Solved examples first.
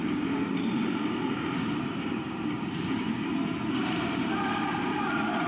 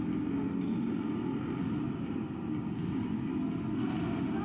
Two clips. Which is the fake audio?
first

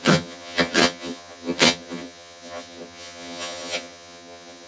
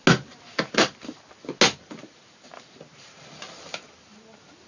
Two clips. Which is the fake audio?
first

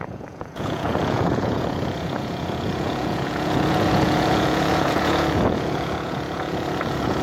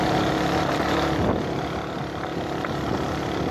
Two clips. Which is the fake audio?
first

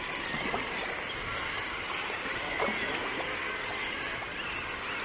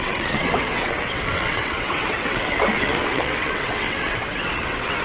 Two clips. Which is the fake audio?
second